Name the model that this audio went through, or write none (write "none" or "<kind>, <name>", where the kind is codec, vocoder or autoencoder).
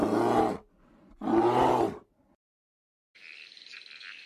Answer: none